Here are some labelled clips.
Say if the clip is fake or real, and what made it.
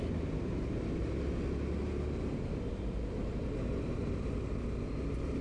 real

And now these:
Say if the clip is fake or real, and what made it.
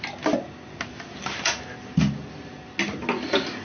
real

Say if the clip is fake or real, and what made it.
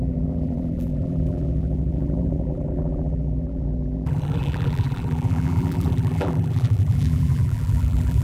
fake, vocoder, BigVGAN v2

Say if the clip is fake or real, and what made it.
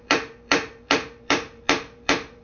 fake, vocoder, BigVGAN v2